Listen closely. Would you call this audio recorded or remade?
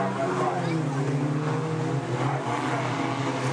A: recorded